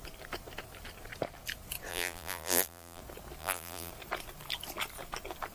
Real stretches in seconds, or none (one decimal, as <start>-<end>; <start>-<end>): 0.0-1.9; 3.0-3.4; 3.9-5.5